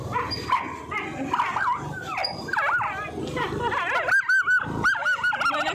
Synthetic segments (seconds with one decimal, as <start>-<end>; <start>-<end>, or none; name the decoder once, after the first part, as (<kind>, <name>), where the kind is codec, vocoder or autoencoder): none